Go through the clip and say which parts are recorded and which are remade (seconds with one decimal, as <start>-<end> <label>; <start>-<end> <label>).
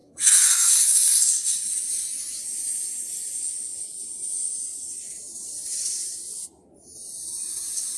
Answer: 0.0-1.7 remade; 1.7-8.0 recorded